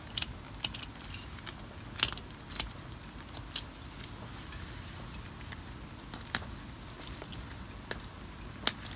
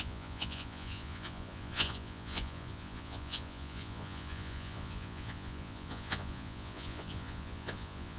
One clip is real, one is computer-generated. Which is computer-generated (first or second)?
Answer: second